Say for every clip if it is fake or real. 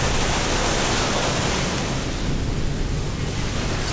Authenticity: real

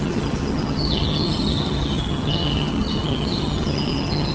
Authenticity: fake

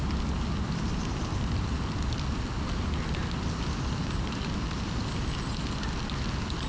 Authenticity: real